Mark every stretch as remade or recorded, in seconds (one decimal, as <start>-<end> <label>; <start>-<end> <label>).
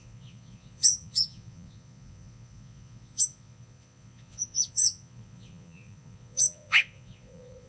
0.0-7.7 remade